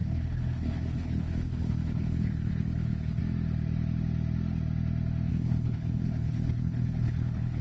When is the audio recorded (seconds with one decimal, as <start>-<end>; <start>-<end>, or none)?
3.2-5.3